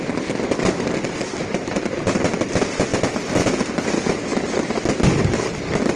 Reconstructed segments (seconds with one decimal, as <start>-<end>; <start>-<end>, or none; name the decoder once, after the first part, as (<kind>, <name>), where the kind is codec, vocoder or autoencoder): 1.4-2.2 (vocoder, BigVGAN v2)